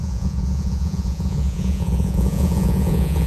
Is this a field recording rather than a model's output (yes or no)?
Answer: no